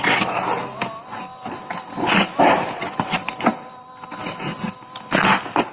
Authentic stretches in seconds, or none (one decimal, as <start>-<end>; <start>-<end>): 0.0-5.7